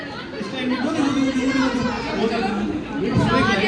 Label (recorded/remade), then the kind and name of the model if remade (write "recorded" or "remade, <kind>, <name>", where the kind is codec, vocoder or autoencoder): recorded